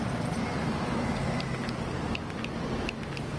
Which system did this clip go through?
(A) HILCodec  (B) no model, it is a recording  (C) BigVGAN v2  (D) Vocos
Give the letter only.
B